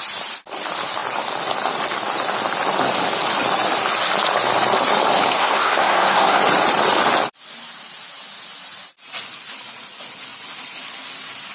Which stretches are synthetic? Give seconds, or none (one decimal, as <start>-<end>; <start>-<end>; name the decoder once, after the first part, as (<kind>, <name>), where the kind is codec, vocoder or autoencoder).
5.4-6.4 (codec, SNAC)